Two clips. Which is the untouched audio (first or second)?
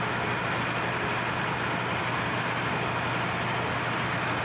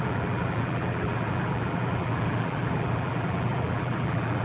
first